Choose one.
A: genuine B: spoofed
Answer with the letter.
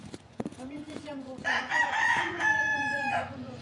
B